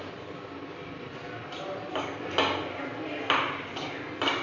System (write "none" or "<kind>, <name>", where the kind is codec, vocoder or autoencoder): none